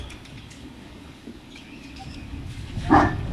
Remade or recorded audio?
remade